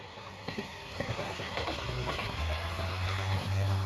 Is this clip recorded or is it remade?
remade